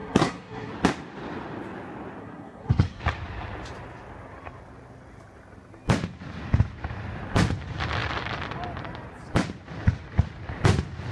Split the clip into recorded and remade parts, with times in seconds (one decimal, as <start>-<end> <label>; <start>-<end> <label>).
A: 0.0-0.7 remade; 0.7-2.2 recorded; 2.2-3.0 remade; 3.0-11.1 recorded